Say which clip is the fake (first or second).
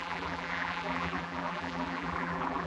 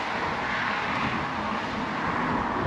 first